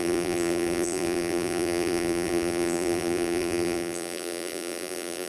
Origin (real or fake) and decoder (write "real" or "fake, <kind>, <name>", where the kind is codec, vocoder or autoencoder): fake, vocoder, BigVGAN v2